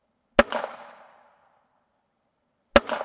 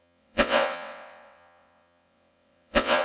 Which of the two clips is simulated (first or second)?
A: second